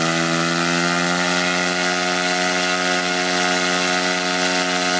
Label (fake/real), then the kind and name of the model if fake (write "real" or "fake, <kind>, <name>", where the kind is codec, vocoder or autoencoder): real